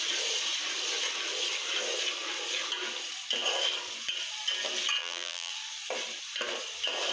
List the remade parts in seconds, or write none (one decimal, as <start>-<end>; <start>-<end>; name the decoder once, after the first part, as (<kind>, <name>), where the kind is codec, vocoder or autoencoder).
5.0-5.5 (vocoder, BigVGAN v2)